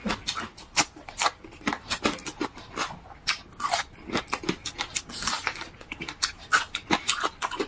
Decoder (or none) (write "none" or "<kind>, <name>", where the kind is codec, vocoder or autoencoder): none